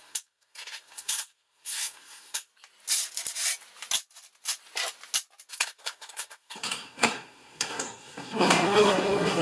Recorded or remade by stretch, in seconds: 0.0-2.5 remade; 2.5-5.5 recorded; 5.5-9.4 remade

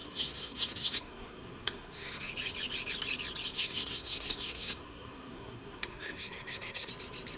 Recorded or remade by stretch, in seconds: 0.0-2.3 remade; 2.3-3.5 recorded; 3.5-6.9 remade; 6.9-7.4 recorded

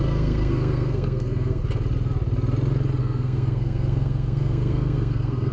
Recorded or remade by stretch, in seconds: 0.0-1.6 remade; 1.6-3.0 recorded; 3.0-5.5 remade

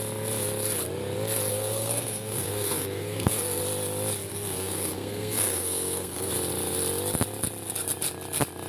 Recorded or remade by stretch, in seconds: 0.0-1.5 recorded; 1.5-3.6 remade; 3.6-4.3 recorded; 4.3-6.3 remade; 6.3-8.7 recorded

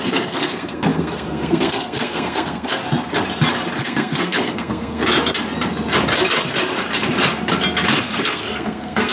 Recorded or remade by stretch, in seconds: 0.0-2.8 remade; 2.8-3.8 recorded; 3.8-5.0 remade; 5.0-8.0 recorded; 8.0-9.1 remade

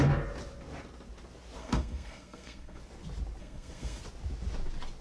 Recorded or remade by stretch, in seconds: 0.0-1.6 recorded; 1.6-2.8 remade; 2.8-3.4 recorded; 3.4-4.0 remade; 4.0-5.0 recorded

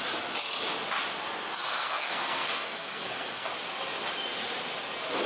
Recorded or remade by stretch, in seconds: 0.0-1.6 recorded; 1.6-3.5 remade; 3.5-5.3 recorded